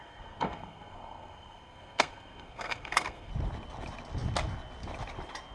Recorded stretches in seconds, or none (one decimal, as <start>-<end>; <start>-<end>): 3.3-5.5